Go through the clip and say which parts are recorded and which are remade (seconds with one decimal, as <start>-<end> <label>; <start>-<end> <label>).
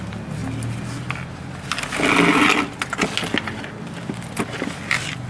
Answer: 0.0-5.3 recorded